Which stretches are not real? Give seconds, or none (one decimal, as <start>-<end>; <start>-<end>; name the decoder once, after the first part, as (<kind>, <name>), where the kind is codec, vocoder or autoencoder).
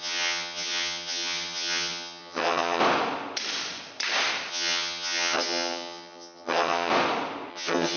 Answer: 0.0-2.8 (vocoder, HiFi-GAN); 4.5-6.9; 7.5-8.0